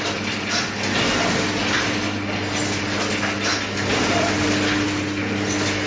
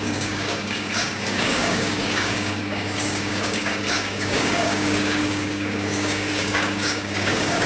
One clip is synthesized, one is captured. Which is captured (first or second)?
first